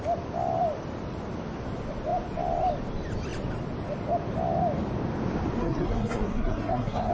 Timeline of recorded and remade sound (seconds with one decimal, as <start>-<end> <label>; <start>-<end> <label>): 0.0-5.6 recorded; 5.6-7.1 remade